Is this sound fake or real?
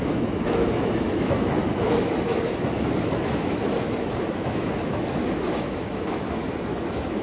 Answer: fake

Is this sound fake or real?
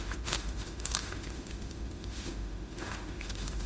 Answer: fake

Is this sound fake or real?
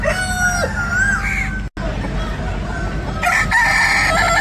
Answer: real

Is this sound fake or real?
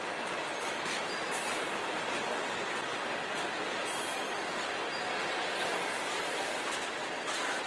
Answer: real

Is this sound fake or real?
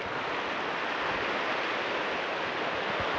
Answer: real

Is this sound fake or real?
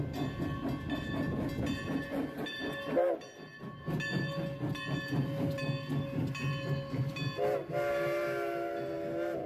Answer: real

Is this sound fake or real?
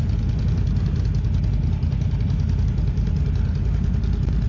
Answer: real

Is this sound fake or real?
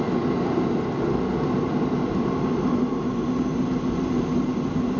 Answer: real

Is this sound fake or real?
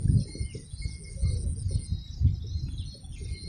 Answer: real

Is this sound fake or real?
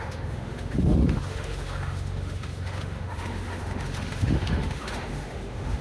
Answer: fake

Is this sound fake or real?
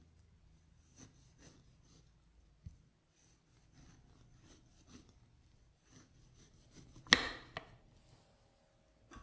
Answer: real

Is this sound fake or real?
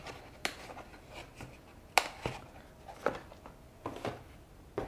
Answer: real